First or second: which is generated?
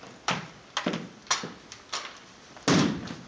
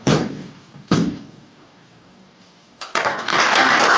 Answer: second